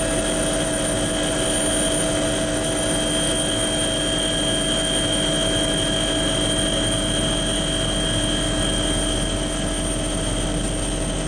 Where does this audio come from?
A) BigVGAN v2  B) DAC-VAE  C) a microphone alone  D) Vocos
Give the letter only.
C